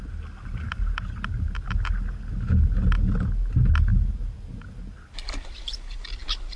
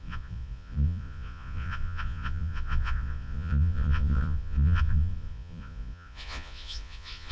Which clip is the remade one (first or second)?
second